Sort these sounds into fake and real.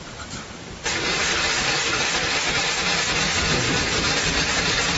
fake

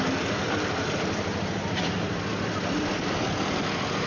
real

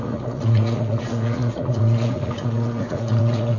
fake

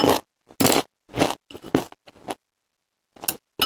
real